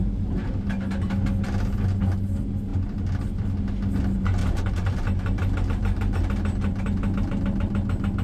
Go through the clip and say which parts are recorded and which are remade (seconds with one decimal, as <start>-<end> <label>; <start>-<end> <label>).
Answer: 0.0-4.4 recorded; 4.4-6.2 remade; 6.2-8.2 recorded